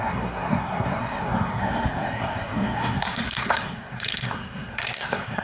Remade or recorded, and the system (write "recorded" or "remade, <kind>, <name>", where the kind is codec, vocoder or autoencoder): remade, codec, SNAC